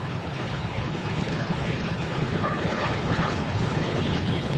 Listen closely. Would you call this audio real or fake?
fake